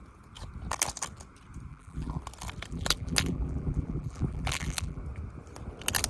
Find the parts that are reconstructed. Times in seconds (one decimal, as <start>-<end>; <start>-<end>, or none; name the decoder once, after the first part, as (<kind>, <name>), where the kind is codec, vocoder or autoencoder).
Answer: 1.7-2.2 (vocoder, BigVGAN v2); 2.7-5.0